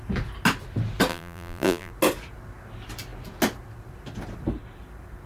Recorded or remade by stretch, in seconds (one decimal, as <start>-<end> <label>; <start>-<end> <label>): 0.0-1.1 recorded; 1.1-1.9 remade; 1.9-5.3 recorded